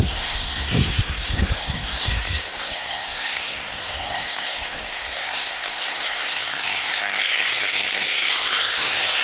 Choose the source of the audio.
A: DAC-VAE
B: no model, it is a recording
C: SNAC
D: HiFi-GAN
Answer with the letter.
C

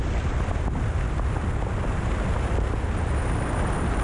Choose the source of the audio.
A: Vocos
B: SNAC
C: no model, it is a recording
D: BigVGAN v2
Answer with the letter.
C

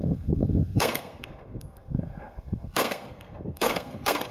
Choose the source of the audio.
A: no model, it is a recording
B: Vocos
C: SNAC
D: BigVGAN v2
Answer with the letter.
C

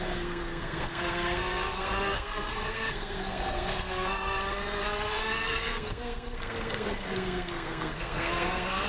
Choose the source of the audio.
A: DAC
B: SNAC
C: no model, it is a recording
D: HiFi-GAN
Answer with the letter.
B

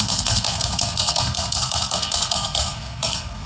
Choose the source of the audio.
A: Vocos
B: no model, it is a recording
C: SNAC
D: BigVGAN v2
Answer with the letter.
C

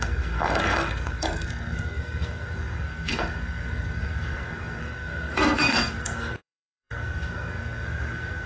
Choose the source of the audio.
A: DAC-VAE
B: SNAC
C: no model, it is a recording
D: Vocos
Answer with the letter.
B